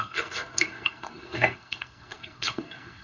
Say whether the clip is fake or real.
fake